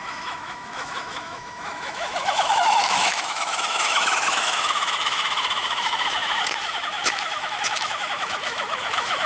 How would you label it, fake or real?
fake